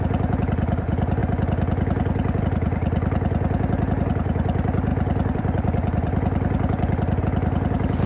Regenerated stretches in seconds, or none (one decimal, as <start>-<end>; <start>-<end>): 4.9-7.2